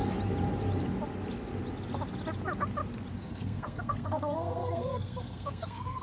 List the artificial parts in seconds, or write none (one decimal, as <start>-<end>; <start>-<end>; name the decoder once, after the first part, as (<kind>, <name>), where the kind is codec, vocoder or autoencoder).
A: 3.2-6.0 (codec, SNAC)